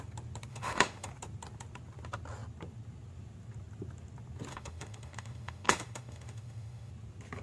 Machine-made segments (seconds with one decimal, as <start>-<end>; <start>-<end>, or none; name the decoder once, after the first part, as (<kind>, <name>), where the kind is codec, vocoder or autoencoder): 0.5-1.1 (autoencoder, DAC-VAE); 4.5-6.9